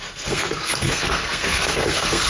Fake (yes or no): yes